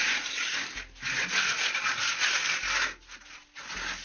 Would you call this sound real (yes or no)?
yes